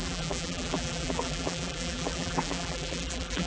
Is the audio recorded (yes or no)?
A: no